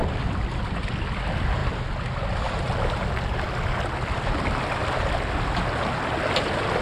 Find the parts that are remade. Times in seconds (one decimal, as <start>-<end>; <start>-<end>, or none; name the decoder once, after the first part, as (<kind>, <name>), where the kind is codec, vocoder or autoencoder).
none